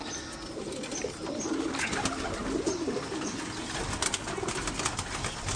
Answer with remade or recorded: recorded